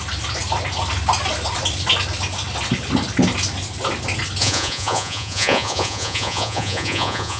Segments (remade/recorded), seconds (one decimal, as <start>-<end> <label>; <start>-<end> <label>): 0.0-4.4 recorded; 4.4-7.4 remade